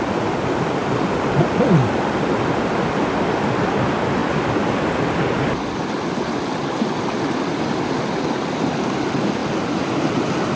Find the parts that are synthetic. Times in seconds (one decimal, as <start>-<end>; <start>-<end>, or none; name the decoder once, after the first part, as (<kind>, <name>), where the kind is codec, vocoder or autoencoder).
0.8-2.2 (vocoder, BigVGAN v2); 4.2-7.6